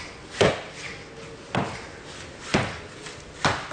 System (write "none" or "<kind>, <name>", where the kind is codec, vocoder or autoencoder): none